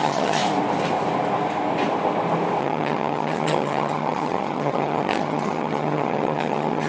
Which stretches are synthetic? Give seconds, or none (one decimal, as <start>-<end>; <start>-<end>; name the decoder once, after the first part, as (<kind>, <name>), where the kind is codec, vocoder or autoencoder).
0.0-0.4 (vocoder, HiFi-GAN); 2.6-6.9